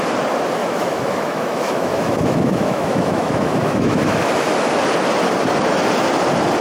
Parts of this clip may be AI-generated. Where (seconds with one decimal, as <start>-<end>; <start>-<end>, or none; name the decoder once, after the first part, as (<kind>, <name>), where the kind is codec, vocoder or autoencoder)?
0.6-4.3 (autoencoder, DAC-VAE)